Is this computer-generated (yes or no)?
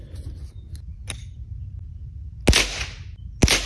no